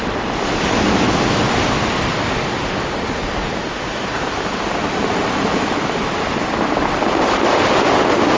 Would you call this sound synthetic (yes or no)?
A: no